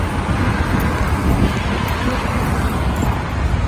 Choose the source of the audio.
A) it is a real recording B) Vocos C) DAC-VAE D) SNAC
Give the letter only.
A